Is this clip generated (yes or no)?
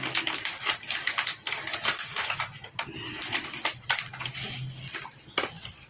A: no